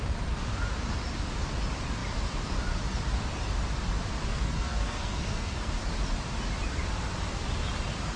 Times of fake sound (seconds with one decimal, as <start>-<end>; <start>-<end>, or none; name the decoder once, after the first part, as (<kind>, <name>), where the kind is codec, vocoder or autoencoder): 4.3-5.8 (codec, SNAC)